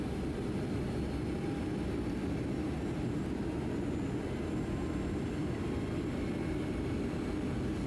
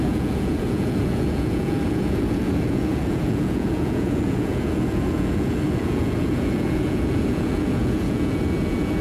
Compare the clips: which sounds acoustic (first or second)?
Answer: first